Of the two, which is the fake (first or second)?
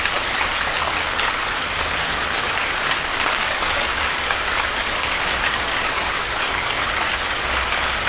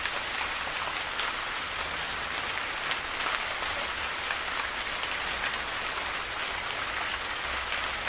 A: first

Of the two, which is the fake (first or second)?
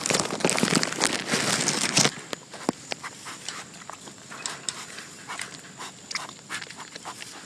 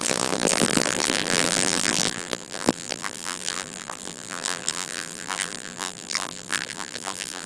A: second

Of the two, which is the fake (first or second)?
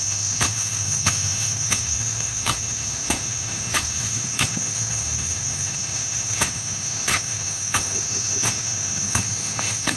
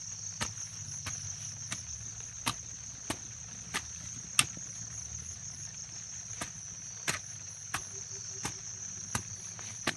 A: first